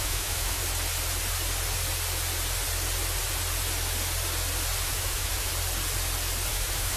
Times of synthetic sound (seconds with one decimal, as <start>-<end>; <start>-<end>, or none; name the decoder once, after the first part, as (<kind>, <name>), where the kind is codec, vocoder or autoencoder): 0.0-0.6 (autoencoder, DAC-VAE); 4.8-5.5; 6.5-7.0